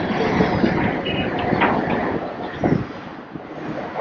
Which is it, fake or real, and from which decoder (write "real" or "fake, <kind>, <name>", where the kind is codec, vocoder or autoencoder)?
real